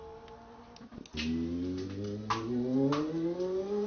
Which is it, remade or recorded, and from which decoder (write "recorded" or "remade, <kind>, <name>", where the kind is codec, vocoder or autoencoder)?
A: recorded